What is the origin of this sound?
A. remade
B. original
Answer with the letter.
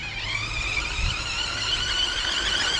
B